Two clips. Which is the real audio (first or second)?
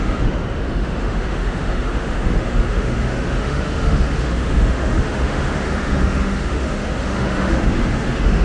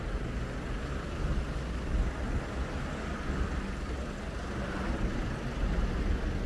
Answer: second